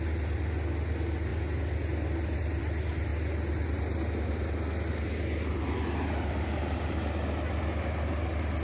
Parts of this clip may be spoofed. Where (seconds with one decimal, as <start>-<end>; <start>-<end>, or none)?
none

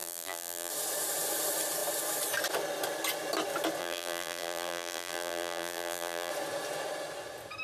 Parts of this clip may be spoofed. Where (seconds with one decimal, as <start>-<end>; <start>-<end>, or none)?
0.0-0.7; 3.8-6.3

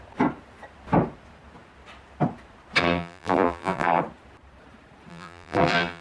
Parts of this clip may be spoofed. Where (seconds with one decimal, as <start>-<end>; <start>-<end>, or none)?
2.8-4.0; 5.1-6.0

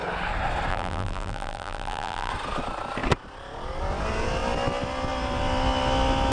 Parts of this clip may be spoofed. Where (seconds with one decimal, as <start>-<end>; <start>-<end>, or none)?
0.7-2.3

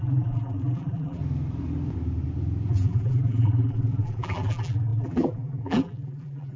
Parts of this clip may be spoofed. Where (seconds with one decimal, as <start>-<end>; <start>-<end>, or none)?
0.0-1.2; 2.7-6.6

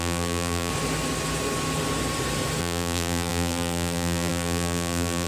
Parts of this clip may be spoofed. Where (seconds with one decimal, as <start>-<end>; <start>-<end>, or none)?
0.0-0.7; 2.6-5.3

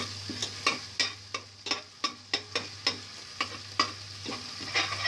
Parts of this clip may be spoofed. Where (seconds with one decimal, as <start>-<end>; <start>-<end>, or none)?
none

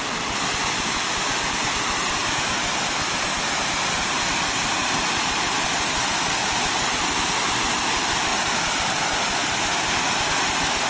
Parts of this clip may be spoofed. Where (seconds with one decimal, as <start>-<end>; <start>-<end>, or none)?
2.2-7.0; 8.3-9.0